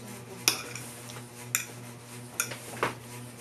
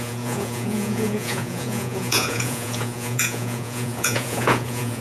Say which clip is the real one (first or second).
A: first